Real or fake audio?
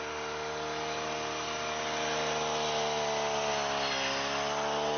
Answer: real